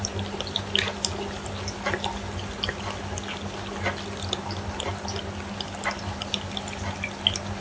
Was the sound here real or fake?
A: real